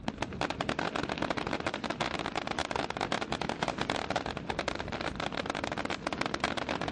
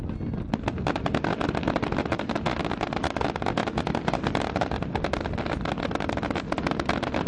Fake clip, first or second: first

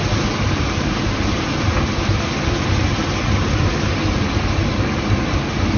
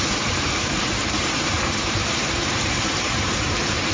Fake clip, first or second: second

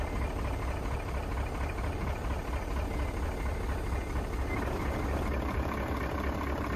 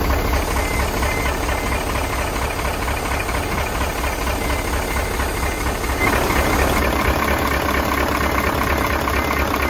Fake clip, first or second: first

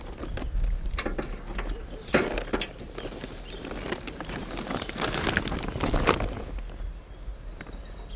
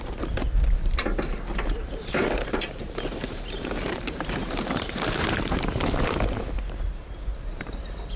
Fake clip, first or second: second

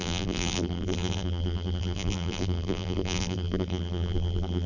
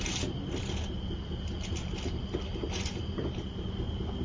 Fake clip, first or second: first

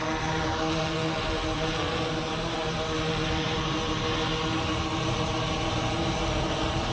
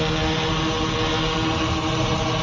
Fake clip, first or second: first